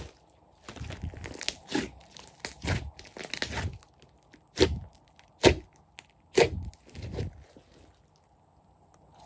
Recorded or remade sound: recorded